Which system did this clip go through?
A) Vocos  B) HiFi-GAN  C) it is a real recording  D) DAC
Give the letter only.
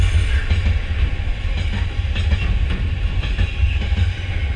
C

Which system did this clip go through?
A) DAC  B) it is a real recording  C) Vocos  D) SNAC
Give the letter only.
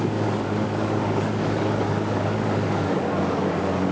A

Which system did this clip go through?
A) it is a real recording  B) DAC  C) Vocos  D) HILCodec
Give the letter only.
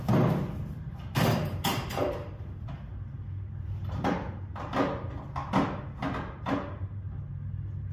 A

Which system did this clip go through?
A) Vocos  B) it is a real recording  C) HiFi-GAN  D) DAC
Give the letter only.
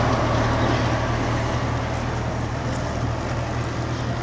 B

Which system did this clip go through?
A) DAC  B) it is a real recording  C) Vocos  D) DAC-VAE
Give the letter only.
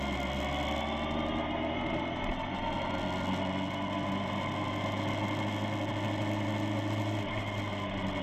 B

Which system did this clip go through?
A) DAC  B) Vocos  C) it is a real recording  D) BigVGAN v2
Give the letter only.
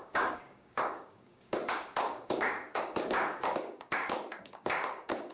A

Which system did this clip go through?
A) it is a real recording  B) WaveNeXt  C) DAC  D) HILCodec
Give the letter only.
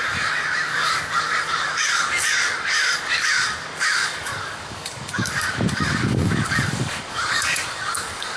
C